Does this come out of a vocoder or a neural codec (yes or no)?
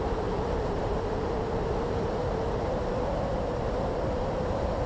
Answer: yes